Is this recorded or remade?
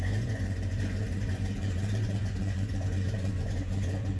remade